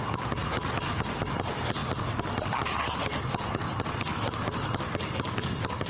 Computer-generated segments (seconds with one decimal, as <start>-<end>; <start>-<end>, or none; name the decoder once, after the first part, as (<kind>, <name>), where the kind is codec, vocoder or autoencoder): 1.8-2.3 (vocoder, BigVGAN v2)